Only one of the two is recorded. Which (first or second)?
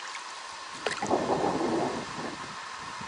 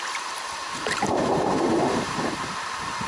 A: first